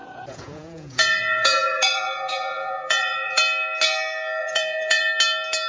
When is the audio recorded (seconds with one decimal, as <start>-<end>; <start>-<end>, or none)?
3.4-4.4; 5.0-5.7